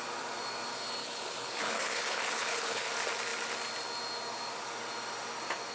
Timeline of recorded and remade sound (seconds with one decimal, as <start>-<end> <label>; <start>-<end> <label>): 0.0-1.0 recorded; 1.0-2.9 remade; 2.9-5.7 recorded